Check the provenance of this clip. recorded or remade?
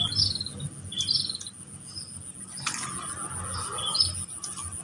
recorded